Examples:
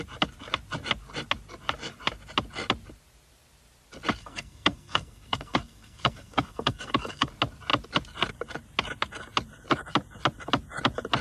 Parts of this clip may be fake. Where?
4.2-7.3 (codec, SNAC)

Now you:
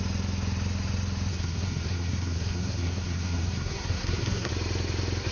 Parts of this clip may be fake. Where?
1.3-4.5 (codec, SNAC)